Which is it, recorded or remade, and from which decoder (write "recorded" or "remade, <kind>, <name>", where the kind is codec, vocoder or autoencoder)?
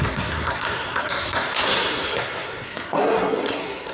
remade, codec, SNAC